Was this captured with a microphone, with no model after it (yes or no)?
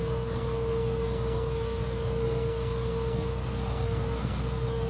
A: no